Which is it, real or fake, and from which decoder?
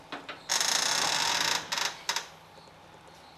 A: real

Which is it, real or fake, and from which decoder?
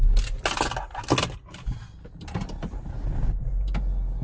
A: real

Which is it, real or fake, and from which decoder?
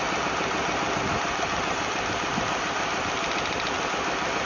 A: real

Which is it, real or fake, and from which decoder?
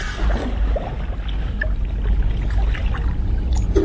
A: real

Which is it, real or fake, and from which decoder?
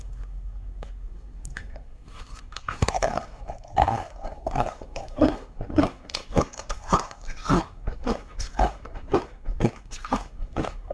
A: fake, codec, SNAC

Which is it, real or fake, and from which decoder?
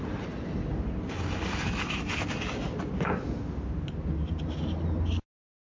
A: real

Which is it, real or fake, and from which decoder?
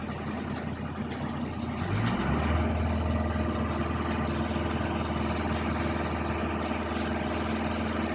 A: real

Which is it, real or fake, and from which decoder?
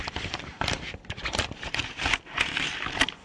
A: fake, vocoder, BigVGAN v2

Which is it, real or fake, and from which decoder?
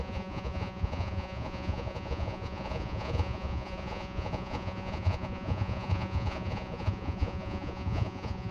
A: fake, vocoder, Vocos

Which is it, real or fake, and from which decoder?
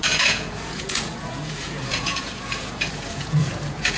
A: fake, vocoder, Vocos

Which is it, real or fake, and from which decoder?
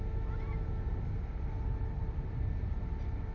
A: real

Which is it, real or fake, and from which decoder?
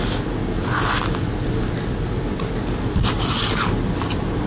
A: real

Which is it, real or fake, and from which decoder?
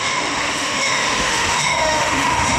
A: fake, autoencoder, DAC-VAE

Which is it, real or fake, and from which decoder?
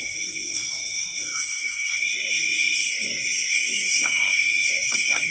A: fake, codec, SNAC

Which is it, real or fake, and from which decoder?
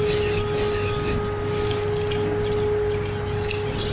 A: real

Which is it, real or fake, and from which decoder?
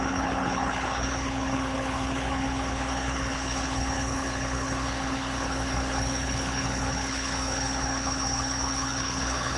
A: fake, codec, HILCodec